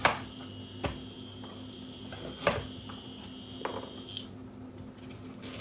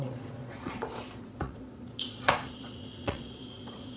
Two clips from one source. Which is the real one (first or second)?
first